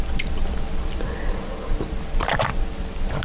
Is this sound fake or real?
real